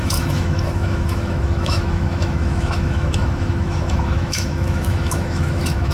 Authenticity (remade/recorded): remade